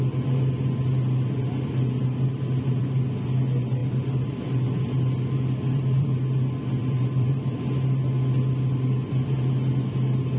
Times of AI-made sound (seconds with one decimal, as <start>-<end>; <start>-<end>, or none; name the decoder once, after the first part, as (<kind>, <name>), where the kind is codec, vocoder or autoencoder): 3.8-4.8 (vocoder, BigVGAN v2); 5.6-6.2; 6.8-7.6